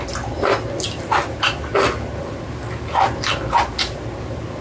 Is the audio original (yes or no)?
yes